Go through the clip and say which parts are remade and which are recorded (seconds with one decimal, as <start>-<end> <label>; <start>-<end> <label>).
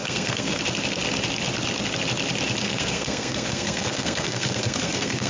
0.0-0.6 remade; 0.6-2.6 recorded; 2.6-5.3 remade